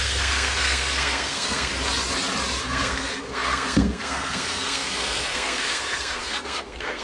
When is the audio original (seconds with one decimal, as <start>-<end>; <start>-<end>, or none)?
1.7-2.6